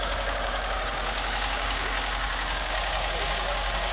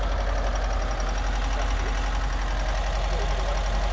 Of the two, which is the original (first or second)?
second